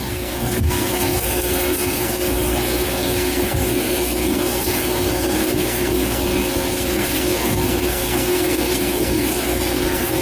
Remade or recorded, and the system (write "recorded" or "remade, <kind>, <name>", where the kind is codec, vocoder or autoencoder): remade, codec, SNAC